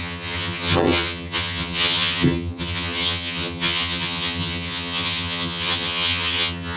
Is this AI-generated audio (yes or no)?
yes